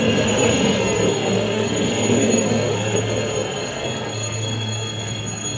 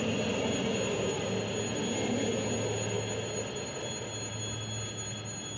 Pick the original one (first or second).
second